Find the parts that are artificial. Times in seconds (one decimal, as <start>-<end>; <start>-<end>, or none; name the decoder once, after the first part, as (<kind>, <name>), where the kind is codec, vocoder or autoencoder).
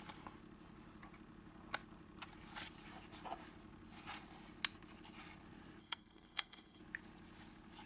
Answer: 5.8-6.8 (codec, SNAC)